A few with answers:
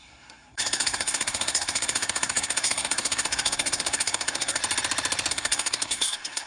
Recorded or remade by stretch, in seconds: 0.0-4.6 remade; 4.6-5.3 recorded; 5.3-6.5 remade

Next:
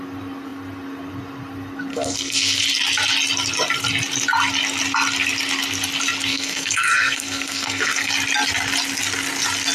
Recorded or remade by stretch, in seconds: 0.0-1.9 recorded; 1.9-2.6 remade; 2.6-6.3 recorded; 6.3-8.1 remade; 8.1-9.7 recorded

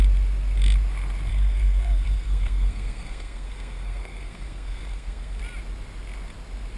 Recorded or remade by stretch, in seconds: 0.0-1.3 recorded; 1.3-5.4 remade; 5.4-6.8 recorded